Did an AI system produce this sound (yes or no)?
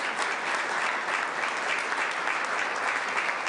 no